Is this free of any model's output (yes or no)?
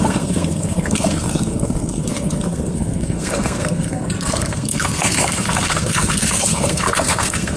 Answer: no